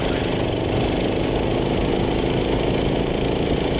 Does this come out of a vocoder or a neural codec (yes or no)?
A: no